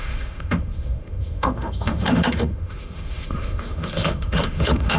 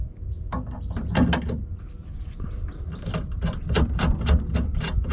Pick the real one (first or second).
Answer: second